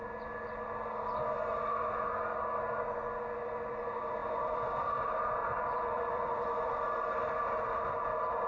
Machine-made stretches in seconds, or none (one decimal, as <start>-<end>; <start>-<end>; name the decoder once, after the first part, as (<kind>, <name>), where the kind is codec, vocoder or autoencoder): 4.2-4.9 (vocoder, BigVGAN v2); 5.4-6.7